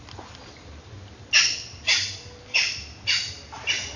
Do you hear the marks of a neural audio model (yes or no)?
no